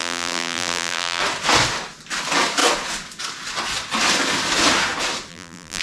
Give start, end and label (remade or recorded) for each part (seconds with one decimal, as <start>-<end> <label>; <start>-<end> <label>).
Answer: 0.0-1.2 remade; 1.2-5.3 recorded; 5.3-5.8 remade